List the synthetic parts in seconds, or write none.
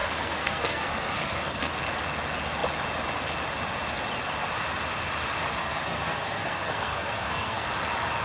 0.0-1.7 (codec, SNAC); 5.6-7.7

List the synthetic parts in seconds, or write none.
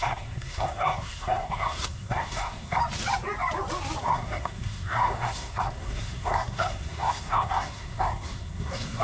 0.0-2.8 (codec, SNAC); 4.0-9.0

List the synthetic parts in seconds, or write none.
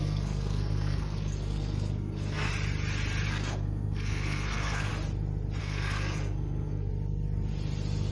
0.0-2.5 (codec, SNAC); 3.3-4.9; 5.6-6.9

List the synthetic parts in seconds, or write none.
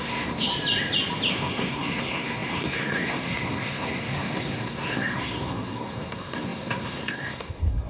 0.0-0.5 (codec, SNAC); 1.3-7.9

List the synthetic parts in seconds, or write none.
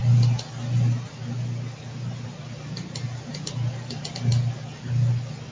none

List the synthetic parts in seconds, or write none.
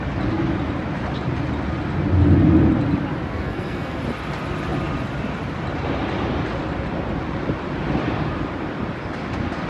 3.3-4.0 (codec, SNAC)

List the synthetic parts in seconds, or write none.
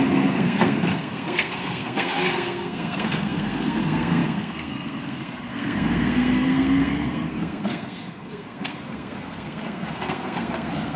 0.0-11.0 (codec, SNAC)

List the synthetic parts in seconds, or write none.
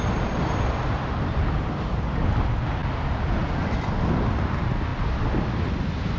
none